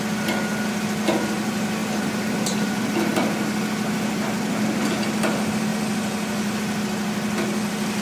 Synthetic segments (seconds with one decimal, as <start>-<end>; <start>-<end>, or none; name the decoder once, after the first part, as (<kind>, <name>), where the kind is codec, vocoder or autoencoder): none